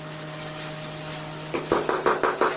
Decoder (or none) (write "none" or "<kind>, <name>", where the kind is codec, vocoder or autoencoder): none